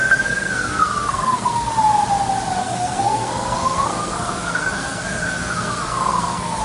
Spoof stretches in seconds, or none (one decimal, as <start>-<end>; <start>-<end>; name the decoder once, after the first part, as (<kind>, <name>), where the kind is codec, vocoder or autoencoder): 0.0-1.7 (codec, SNAC); 2.6-6.6